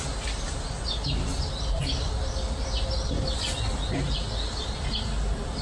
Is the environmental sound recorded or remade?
recorded